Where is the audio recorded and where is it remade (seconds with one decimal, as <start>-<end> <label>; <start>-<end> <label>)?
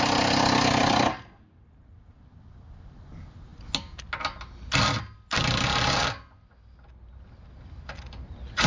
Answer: 0.0-8.7 recorded